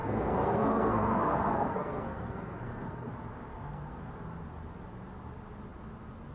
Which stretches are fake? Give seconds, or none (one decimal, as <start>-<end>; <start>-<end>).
0.0-3.1; 3.5-4.1